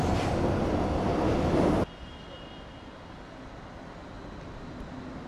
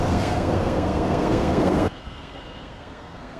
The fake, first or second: second